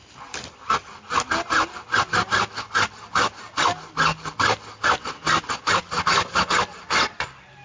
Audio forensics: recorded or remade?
recorded